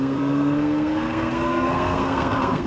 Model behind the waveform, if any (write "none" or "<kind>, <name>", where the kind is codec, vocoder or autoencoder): codec, SNAC